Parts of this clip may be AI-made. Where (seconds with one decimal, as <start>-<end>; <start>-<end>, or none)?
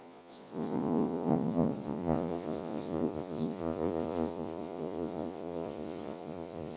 0.0-6.8